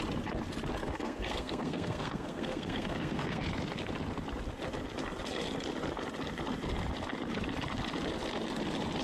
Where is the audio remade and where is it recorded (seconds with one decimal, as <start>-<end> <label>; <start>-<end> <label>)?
0.0-0.8 recorded; 0.8-3.4 remade; 3.4-9.0 recorded